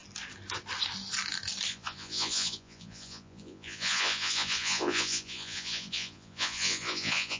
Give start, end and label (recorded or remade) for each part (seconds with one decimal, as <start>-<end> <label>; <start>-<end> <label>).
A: 0.0-1.7 recorded; 1.7-7.4 remade